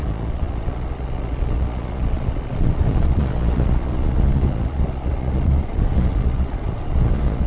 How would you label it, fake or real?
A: fake